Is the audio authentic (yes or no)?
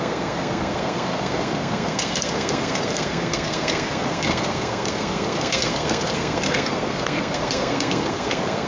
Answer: no